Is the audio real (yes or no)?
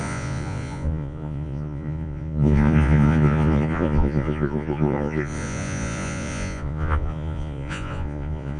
no